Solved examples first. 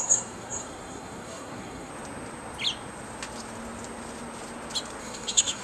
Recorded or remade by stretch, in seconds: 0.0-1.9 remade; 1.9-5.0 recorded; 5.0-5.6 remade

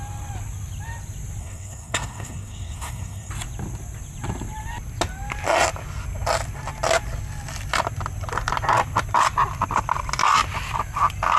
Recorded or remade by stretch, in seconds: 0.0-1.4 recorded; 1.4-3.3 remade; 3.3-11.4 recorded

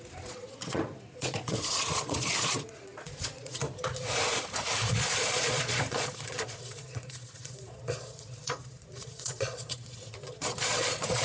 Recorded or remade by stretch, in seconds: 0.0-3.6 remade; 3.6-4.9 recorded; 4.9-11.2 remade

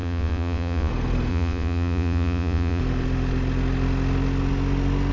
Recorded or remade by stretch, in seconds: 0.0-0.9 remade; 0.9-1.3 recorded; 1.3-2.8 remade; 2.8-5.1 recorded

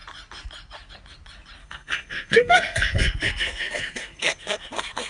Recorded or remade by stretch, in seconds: 0.0-1.6 recorded; 1.6-5.1 remade

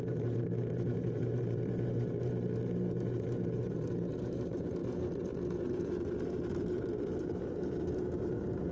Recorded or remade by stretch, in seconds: 0.0-4.8 remade; 4.8-5.8 recorded; 5.8-8.7 remade